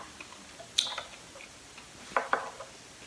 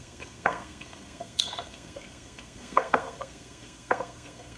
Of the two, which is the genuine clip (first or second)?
first